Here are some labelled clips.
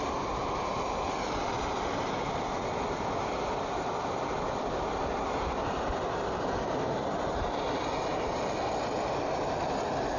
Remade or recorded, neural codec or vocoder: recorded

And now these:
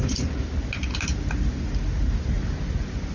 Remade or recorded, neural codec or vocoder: recorded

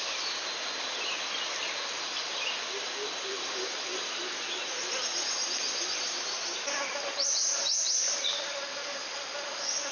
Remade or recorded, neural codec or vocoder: recorded